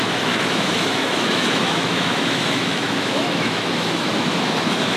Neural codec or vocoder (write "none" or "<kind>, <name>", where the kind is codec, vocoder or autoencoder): autoencoder, DAC-VAE